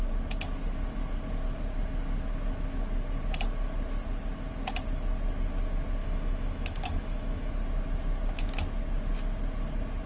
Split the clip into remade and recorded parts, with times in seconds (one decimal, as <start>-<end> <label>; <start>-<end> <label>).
0.0-6.0 recorded; 6.0-7.5 remade; 7.5-10.1 recorded